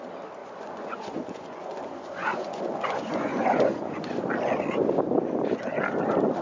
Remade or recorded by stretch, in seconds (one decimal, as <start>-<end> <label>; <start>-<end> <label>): 0.0-0.4 recorded; 0.4-4.2 remade; 4.2-6.4 recorded